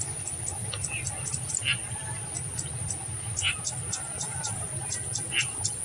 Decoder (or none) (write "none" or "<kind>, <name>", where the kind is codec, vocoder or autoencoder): none